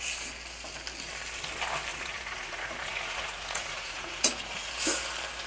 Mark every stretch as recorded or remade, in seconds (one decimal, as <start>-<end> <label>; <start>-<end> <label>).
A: 0.0-1.9 recorded; 1.9-4.7 remade; 4.7-5.5 recorded